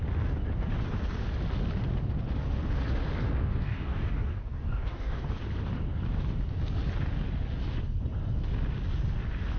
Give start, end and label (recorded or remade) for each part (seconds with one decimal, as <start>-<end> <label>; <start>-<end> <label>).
0.0-3.4 recorded; 3.4-5.3 remade; 5.3-9.6 recorded